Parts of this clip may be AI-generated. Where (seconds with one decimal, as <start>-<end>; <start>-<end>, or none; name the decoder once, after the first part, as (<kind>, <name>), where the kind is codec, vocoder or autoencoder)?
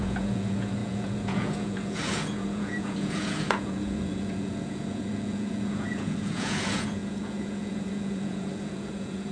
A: 0.0-9.3 (vocoder, Vocos)